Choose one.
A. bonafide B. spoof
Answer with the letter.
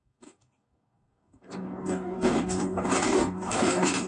B